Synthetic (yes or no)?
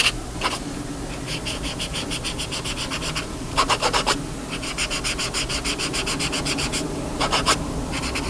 yes